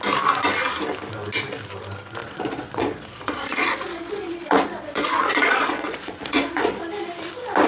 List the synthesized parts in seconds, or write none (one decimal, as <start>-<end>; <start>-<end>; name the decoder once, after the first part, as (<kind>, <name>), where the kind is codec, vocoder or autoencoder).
2.2-6.8 (vocoder, Vocos)